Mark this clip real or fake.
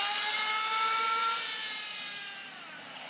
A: real